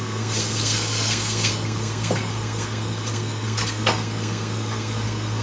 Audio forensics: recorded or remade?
remade